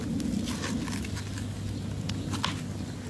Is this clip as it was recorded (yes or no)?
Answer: yes